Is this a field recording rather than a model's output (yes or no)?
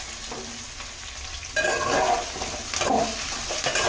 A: yes